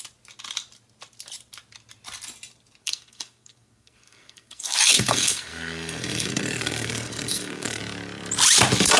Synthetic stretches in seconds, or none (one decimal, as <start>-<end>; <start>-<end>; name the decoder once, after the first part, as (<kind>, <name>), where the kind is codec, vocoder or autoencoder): 2.8-7.8 (codec, SNAC)